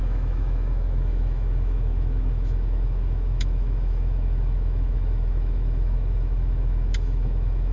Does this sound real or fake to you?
fake